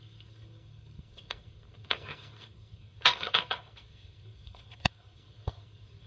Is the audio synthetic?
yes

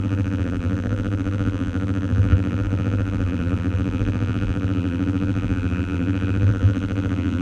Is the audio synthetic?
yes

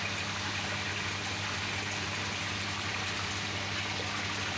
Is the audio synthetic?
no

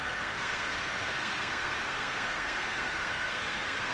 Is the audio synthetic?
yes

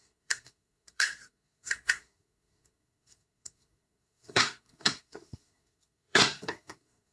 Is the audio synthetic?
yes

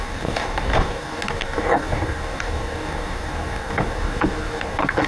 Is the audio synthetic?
yes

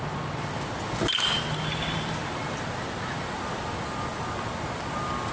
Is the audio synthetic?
no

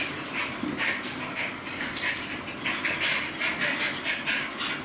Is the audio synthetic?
no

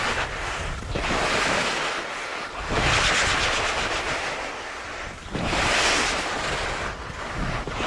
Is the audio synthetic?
no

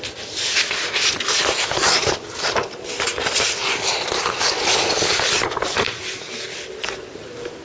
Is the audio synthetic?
no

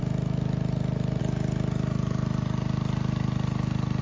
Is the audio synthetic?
no